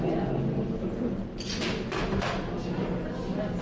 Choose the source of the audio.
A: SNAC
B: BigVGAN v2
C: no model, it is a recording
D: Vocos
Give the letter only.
C